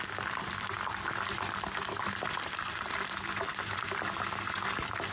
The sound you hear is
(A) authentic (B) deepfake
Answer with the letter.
A